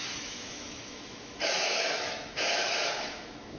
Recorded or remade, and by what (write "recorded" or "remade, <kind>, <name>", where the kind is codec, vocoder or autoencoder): remade, autoencoder, DAC-VAE